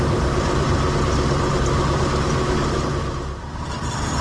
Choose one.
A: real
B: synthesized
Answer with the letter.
B